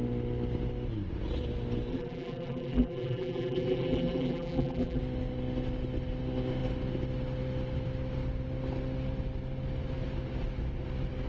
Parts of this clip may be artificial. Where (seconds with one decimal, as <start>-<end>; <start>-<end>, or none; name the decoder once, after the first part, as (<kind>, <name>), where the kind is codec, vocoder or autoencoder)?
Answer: 1.9-5.0 (vocoder, BigVGAN v2)